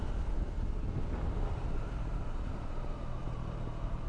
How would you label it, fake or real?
real